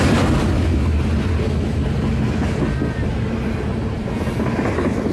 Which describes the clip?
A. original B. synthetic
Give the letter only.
A